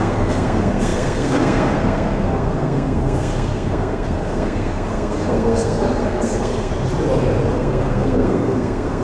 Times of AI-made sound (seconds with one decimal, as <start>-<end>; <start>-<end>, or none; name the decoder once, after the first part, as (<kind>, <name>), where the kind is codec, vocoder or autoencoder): 0.0-6.7 (codec, SNAC); 7.5-9.0